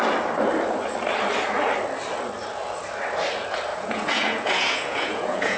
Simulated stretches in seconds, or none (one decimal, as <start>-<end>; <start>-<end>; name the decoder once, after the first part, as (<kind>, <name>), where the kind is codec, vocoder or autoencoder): 3.7-5.6 (vocoder, Vocos)